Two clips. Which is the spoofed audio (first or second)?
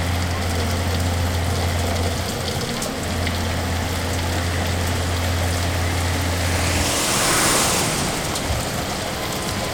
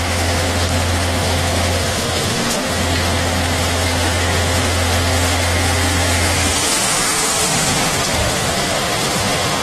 second